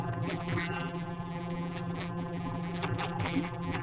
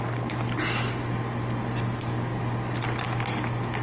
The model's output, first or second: first